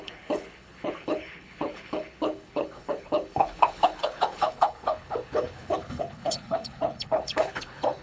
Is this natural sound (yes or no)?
no